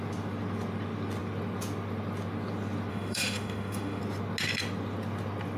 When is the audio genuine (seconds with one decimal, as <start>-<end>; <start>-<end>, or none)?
0.0-2.9; 4.0-5.6